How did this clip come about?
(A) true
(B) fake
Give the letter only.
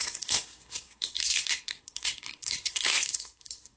B